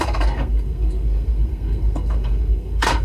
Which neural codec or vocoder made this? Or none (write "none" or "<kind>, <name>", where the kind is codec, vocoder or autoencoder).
codec, SNAC